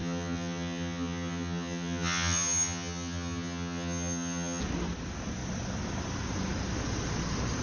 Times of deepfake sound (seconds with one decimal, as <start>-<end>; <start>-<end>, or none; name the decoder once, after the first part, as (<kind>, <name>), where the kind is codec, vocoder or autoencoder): 0.0-4.6 (vocoder, HiFi-GAN)